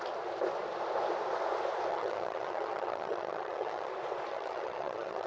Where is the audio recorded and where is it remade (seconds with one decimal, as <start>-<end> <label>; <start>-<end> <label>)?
0.0-1.9 recorded; 1.9-3.9 remade; 3.9-4.3 recorded; 4.3-5.3 remade